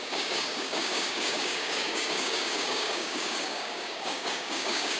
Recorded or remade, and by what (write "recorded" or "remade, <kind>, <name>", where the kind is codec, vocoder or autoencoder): remade, codec, DAC